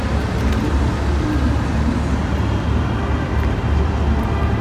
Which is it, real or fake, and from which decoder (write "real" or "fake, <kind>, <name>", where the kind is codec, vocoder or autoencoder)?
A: real